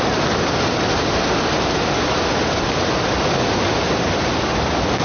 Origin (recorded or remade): recorded